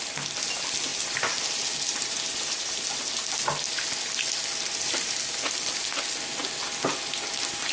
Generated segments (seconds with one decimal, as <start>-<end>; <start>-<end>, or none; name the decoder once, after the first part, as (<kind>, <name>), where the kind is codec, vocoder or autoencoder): 0.9-3.1 (vocoder, BigVGAN v2)